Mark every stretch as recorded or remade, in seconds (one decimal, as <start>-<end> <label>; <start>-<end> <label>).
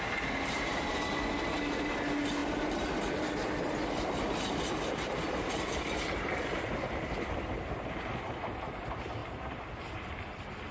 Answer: 0.0-10.7 recorded